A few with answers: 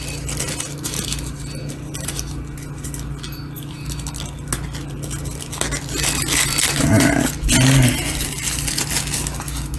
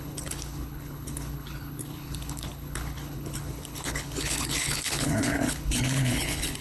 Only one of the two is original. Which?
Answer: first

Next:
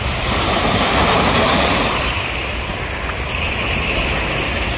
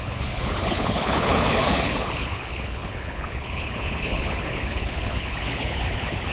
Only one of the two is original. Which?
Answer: first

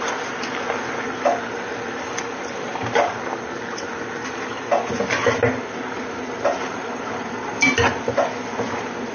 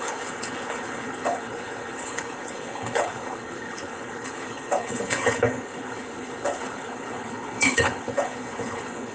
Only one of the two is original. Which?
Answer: first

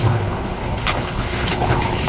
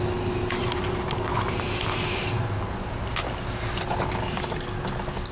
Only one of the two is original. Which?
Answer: second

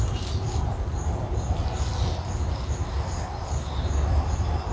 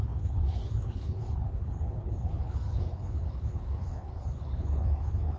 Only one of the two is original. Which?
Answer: first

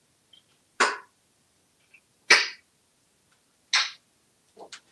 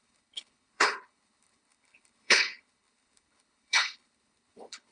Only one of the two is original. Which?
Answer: first